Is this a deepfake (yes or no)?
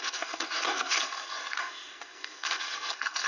yes